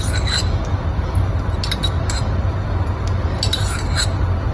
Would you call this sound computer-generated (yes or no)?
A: no